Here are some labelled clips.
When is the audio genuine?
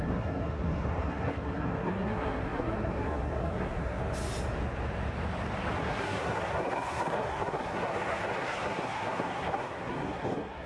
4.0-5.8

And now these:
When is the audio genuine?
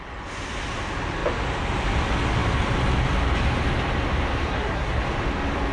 0.0-4.5; 5.0-5.7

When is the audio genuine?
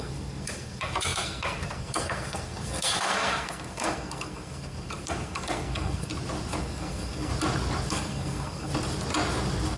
6.1-6.6; 7.3-7.9; 8.7-9.8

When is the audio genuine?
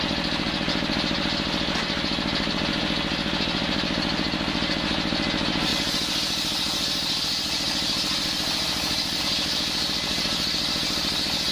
0.0-11.5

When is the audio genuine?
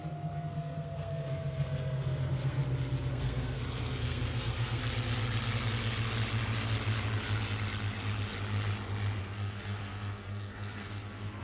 2.6-3.1; 4.8-9.2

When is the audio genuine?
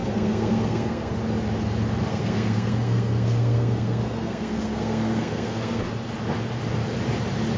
1.1-2.1; 5.8-7.6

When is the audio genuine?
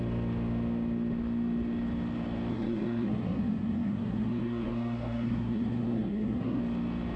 0.0-2.5; 6.6-7.2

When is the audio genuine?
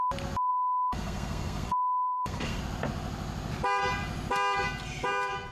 0.0-0.5; 2.6-5.5